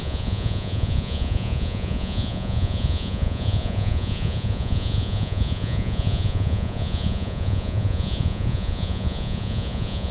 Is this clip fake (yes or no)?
yes